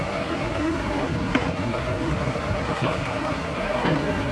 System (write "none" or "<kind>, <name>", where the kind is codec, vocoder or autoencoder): codec, SNAC